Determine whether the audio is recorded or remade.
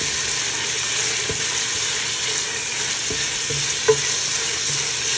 recorded